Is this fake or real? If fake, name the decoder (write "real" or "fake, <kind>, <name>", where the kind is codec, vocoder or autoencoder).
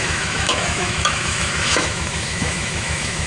fake, autoencoder, DAC-VAE